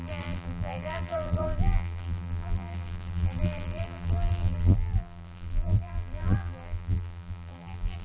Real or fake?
fake